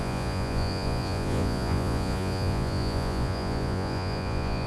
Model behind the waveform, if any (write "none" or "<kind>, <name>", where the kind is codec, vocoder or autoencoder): vocoder, Vocos